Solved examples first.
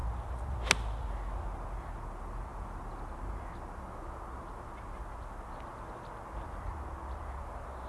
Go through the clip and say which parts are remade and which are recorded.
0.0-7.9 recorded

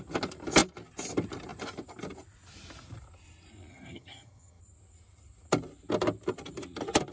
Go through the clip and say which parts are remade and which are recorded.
0.0-3.7 recorded; 3.7-4.6 remade; 4.6-7.1 recorded

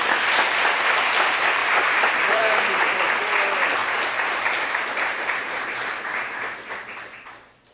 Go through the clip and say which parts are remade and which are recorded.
0.0-1.6 recorded; 1.6-2.6 remade; 2.6-3.8 recorded; 3.8-6.7 remade; 6.7-7.7 recorded

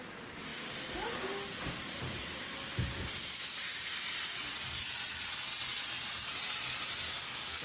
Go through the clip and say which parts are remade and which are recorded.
0.0-7.6 recorded

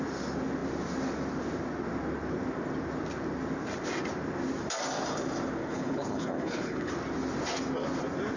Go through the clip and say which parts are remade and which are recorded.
0.0-5.6 recorded; 5.6-6.9 remade; 6.9-8.4 recorded

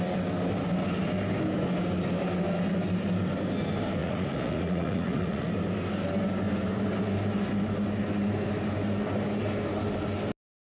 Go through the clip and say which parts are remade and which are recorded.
0.0-4.0 recorded; 4.0-5.5 remade; 5.5-10.7 recorded

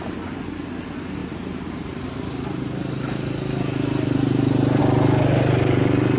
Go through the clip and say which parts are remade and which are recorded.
0.0-6.2 recorded

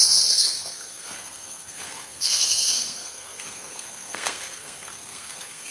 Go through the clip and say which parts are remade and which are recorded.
0.0-5.7 remade